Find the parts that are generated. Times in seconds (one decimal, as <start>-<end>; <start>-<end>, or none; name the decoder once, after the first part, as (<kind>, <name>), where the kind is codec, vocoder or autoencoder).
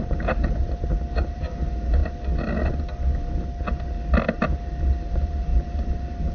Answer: 0.0-0.6 (vocoder, BigVGAN v2); 1.1-2.0; 5.1-6.3